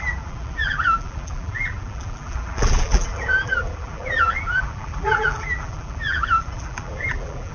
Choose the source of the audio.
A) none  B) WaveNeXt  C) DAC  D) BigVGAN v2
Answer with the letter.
D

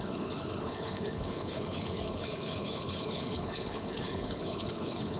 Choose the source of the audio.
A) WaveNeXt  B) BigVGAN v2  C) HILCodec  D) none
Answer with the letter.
C